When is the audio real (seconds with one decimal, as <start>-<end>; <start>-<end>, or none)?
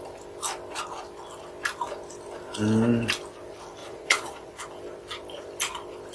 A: 0.0-3.8; 4.5-6.1